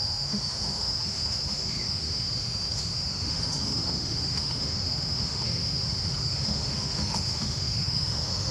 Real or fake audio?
fake